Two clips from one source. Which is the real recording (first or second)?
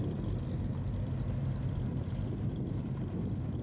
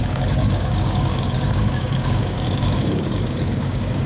first